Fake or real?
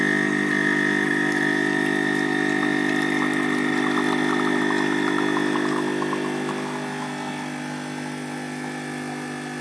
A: real